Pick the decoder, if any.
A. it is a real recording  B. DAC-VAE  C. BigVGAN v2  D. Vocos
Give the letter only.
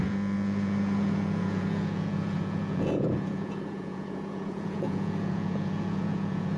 D